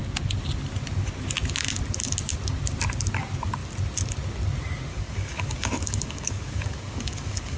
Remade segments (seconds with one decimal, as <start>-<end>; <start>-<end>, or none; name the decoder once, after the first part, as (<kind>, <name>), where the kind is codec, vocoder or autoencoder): 4.9-7.6 (codec, DAC)